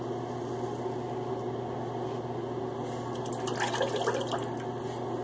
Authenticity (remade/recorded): recorded